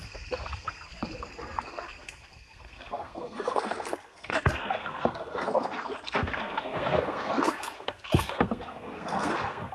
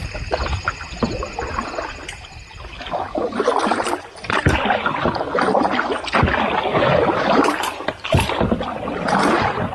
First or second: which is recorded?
second